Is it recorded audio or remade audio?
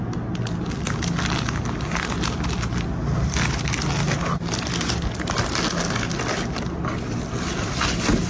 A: recorded